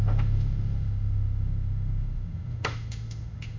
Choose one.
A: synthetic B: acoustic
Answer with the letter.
A